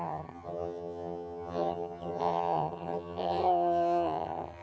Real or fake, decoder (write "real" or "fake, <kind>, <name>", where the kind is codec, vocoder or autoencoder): fake, vocoder, HiFi-GAN